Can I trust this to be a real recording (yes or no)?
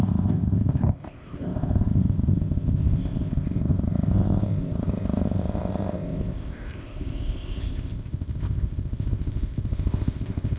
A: no